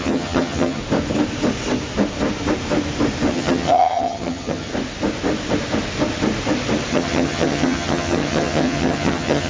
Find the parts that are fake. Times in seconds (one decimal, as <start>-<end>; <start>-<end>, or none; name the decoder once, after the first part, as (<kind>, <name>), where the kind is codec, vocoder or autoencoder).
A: 0.0-0.8 (vocoder, HiFi-GAN); 3.3-4.7; 6.9-9.5